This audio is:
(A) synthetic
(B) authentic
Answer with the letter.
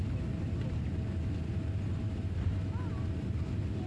B